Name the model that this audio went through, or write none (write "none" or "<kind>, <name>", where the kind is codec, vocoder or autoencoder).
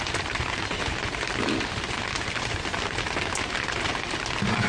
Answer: none